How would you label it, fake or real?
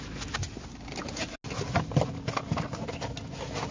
real